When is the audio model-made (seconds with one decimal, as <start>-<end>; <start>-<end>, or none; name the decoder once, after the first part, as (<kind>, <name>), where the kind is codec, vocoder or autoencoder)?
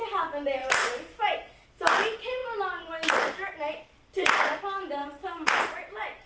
0.6-1.2 (vocoder, BigVGAN v2); 5.0-6.3